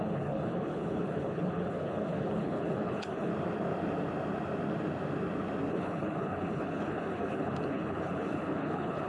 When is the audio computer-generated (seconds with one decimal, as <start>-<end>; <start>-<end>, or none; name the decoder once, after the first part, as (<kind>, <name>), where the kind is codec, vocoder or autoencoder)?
0.0-3.3 (codec, HILCodec); 5.7-9.1